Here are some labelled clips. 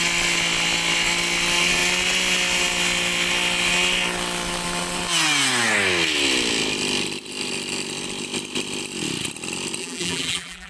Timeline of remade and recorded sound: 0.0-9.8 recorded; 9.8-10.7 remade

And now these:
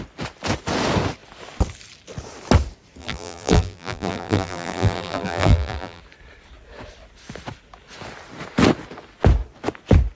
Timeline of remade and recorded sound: 0.0-3.0 recorded; 3.0-6.0 remade; 6.0-10.2 recorded